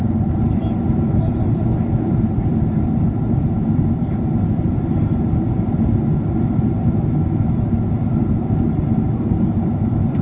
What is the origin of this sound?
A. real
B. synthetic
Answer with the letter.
A